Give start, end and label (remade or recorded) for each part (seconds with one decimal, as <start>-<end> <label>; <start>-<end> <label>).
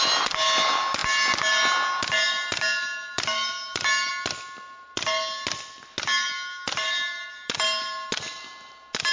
0.0-9.1 recorded